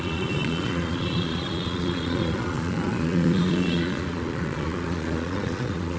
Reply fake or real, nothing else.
fake